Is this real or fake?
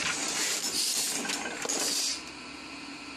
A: real